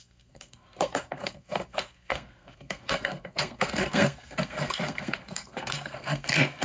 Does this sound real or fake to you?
fake